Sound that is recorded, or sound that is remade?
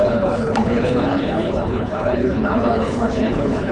remade